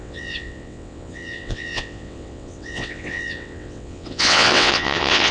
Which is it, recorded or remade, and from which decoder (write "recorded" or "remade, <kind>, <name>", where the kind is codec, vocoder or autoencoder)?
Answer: remade, vocoder, WaveNeXt